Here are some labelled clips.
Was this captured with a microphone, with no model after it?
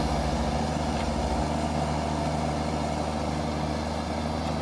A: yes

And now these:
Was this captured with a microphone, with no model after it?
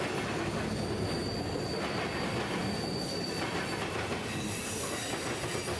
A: yes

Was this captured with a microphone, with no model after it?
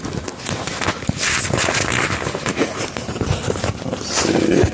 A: yes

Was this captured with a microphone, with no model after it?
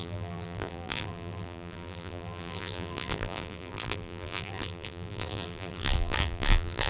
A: no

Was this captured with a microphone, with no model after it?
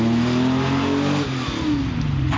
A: yes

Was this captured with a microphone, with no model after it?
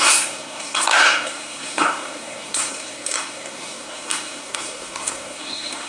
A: no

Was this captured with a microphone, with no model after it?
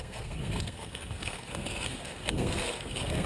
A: no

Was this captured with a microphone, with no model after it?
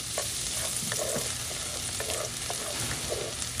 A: yes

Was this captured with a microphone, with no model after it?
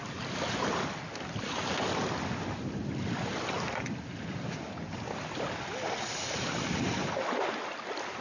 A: yes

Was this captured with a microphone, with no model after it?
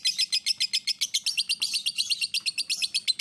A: yes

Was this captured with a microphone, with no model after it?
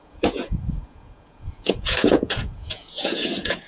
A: no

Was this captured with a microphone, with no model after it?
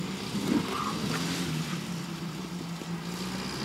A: yes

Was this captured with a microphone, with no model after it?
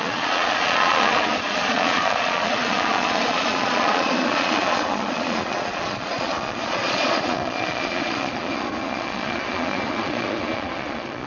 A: no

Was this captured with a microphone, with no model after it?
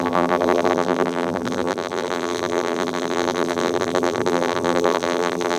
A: no